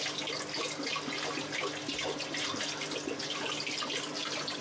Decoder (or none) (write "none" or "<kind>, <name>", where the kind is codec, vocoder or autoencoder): none